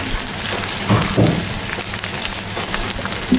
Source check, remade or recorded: recorded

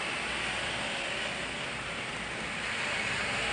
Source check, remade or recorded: recorded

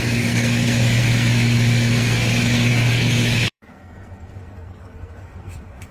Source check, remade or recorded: remade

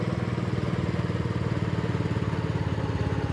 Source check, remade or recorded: recorded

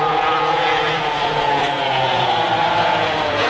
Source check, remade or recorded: remade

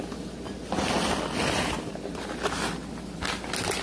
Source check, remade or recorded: recorded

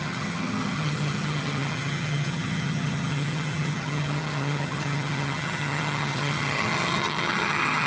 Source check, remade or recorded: remade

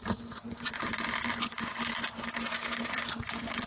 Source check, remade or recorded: remade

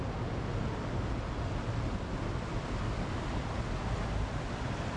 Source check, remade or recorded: recorded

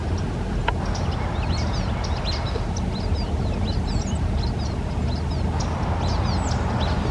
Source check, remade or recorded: recorded